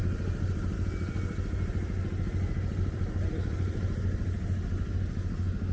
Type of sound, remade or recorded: recorded